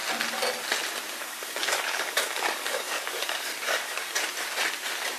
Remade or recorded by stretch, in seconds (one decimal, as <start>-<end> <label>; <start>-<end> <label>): 0.0-1.2 recorded; 1.2-4.2 remade; 4.2-5.2 recorded